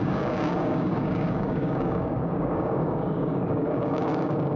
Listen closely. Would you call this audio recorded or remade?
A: remade